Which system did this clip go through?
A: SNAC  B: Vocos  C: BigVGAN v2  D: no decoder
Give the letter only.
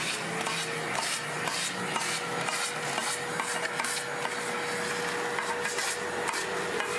D